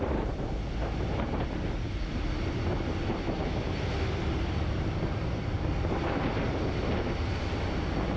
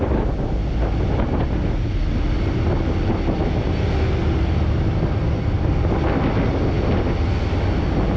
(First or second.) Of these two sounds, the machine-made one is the first